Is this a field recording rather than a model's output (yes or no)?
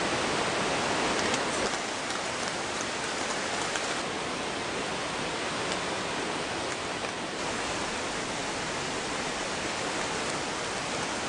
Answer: yes